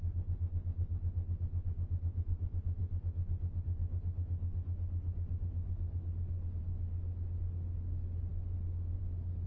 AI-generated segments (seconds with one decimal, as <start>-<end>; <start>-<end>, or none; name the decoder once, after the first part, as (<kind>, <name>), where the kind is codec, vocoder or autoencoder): none